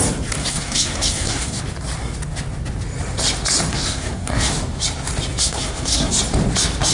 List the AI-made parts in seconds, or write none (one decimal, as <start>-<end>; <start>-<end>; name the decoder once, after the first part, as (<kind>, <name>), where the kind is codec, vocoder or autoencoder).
0.4-1.6 (codec, SNAC); 3.7-4.5; 5.4-6.1